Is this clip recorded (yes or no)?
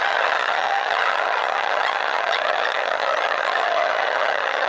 no